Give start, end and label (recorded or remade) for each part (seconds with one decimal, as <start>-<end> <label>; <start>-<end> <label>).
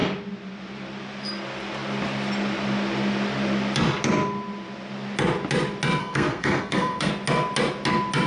0.0-6.0 recorded; 6.0-7.1 remade; 7.1-8.3 recorded